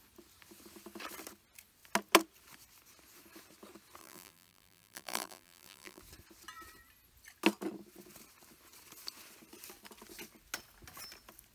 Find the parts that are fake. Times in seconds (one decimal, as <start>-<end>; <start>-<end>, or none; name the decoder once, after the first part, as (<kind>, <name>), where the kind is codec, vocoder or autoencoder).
4.0-6.0 (vocoder, BigVGAN v2)